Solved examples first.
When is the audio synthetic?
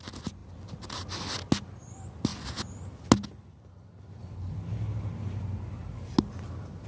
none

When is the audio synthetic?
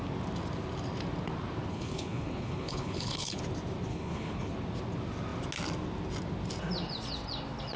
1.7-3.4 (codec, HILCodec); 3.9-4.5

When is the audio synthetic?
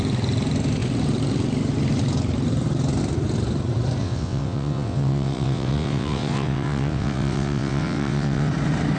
4.0-8.5 (vocoder, WaveNeXt)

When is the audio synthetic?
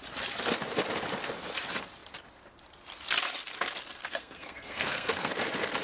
4.0-5.3 (codec, SNAC)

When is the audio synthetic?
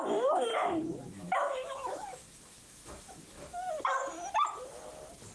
0.5-3.7 (autoencoder, DAC-VAE)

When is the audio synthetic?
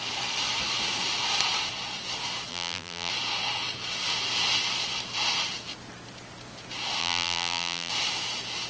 2.5-3.1 (vocoder, BigVGAN v2); 7.0-7.9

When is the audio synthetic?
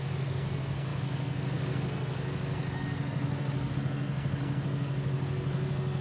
0.0-6.0 (codec, SNAC)